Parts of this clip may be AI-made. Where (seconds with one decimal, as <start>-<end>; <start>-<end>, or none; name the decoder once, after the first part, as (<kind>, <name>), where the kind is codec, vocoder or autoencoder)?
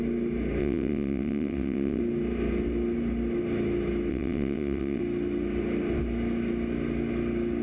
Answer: 0.6-2.0 (vocoder, WaveNeXt); 4.1-5.0